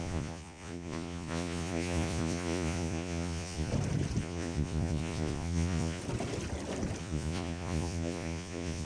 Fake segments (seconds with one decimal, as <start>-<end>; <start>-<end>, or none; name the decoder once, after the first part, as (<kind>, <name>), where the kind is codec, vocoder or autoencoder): 0.0-3.7 (vocoder, Vocos); 4.2-6.0; 7.0-8.8